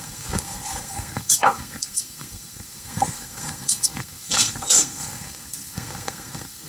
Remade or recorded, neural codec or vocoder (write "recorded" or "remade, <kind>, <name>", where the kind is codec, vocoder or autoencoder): remade, codec, SNAC